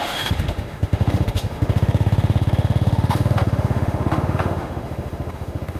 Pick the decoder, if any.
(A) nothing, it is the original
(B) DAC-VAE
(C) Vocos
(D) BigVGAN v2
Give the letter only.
B